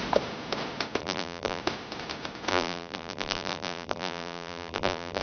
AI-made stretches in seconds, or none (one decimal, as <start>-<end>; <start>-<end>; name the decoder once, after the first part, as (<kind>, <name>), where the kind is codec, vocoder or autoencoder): 1.0-1.6 (vocoder, BigVGAN v2); 2.5-5.2